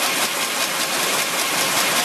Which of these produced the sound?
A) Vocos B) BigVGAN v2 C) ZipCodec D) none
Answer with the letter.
D